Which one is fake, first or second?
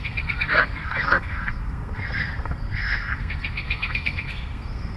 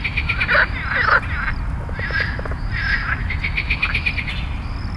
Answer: first